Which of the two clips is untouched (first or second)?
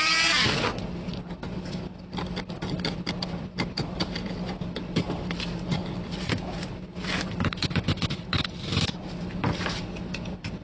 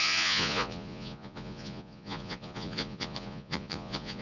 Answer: first